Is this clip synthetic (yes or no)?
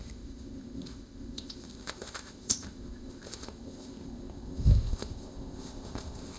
yes